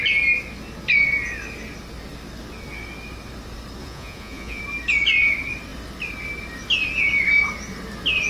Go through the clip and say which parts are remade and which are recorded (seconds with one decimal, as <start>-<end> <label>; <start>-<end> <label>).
0.0-3.8 recorded; 3.8-4.6 remade; 4.6-8.3 recorded